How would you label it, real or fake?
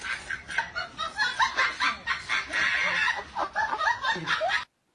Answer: real